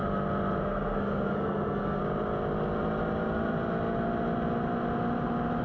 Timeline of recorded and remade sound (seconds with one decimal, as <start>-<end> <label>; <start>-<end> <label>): 0.0-0.6 recorded; 0.6-2.0 remade; 2.0-5.6 recorded